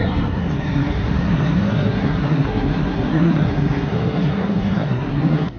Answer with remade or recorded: remade